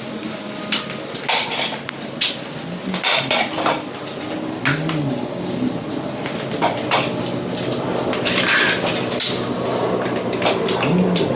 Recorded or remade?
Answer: recorded